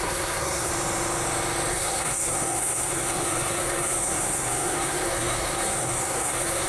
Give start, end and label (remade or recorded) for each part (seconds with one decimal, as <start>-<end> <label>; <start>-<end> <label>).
0.0-0.7 remade; 0.7-1.7 recorded; 1.7-6.7 remade